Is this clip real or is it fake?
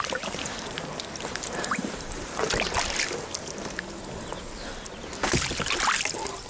real